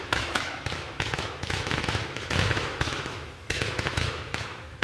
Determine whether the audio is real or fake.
fake